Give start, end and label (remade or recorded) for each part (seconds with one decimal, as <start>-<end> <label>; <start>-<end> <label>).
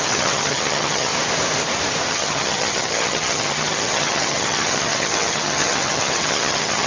0.0-1.1 remade; 1.1-2.1 recorded; 2.1-6.9 remade